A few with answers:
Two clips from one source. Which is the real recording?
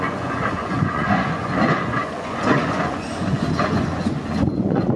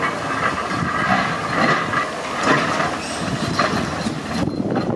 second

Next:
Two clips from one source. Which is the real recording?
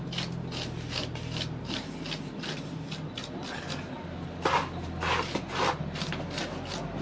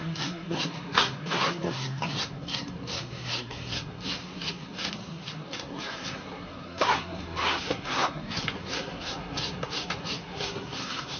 first